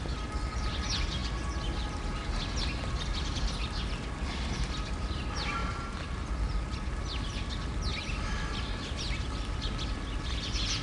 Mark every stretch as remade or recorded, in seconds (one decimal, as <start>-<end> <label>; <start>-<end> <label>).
0.0-5.6 recorded; 5.6-6.3 remade; 6.3-10.8 recorded